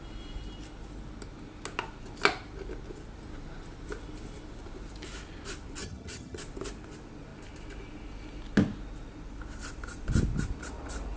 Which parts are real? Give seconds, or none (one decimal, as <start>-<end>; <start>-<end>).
0.0-5.8; 6.4-11.2